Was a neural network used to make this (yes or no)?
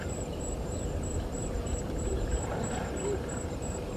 yes